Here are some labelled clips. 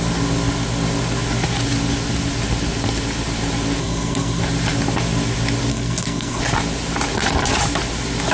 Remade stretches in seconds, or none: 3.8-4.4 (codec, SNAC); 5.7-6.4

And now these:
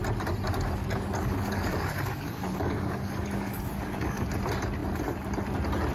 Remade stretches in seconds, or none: 0.8-4.3 (codec, DAC)

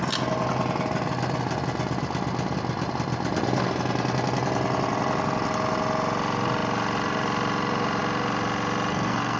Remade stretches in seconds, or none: 8.9-9.4 (codec, SNAC)